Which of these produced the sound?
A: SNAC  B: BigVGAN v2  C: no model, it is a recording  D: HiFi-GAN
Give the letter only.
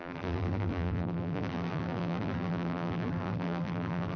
B